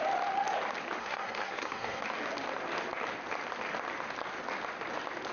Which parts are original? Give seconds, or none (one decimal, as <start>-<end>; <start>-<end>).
0.0-1.0; 2.0-5.3